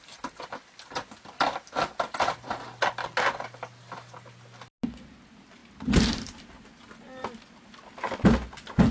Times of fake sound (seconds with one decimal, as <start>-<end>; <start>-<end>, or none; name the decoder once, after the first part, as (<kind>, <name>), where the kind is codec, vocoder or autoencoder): none